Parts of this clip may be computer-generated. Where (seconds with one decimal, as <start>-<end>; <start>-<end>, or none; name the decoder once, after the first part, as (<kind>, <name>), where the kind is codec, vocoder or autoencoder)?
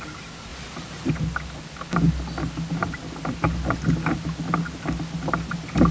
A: none